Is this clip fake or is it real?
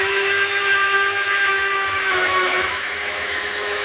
fake